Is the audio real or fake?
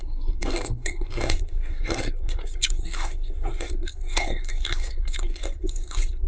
fake